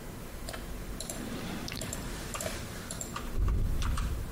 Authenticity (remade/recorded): remade